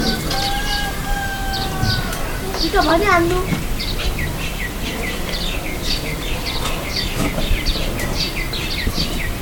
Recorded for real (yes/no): yes